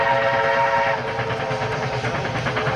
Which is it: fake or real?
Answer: real